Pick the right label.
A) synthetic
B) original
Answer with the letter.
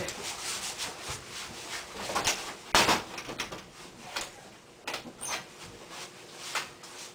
B